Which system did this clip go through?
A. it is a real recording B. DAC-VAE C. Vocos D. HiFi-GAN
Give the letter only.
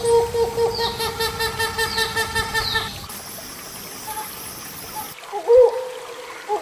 A